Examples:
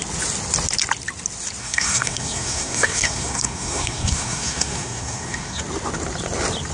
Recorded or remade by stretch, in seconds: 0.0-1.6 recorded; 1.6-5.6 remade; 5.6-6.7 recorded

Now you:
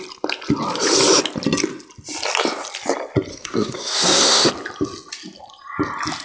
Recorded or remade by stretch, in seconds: 0.0-3.3 recorded; 3.3-4.5 remade; 4.5-6.2 recorded

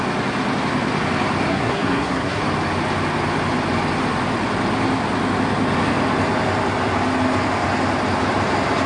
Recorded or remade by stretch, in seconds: 0.0-1.5 recorded; 1.5-2.4 remade; 2.4-8.9 recorded

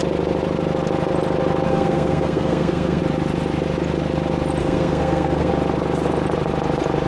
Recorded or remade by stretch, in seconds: 0.0-1.7 recorded; 1.7-3.0 remade; 3.0-4.6 recorded; 4.6-5.5 remade; 5.5-7.1 recorded

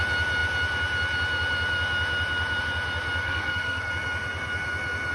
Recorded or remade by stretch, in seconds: 0.0-3.2 recorded; 3.2-3.9 remade; 3.9-5.1 recorded